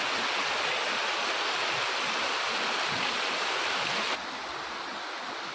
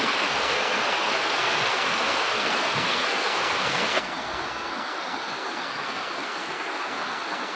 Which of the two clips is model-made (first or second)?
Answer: second